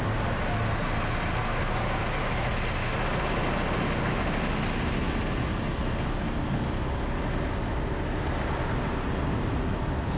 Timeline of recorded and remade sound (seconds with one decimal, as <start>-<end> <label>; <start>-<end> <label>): 0.0-10.2 recorded